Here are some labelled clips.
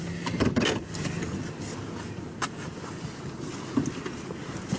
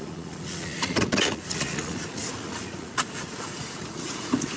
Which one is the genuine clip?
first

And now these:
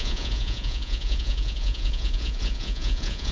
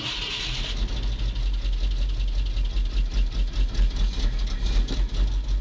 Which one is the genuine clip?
second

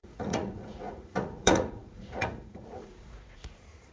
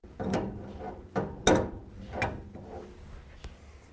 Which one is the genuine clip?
second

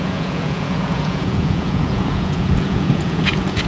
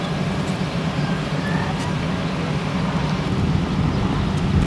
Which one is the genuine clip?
second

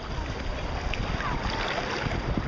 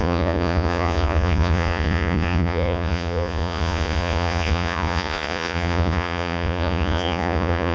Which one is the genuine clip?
first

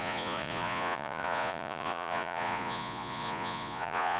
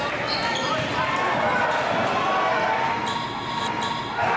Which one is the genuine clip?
second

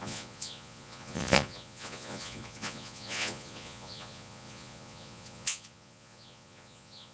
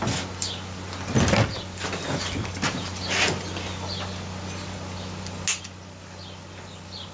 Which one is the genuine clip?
second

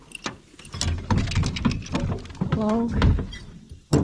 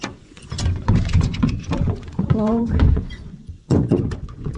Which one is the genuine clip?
first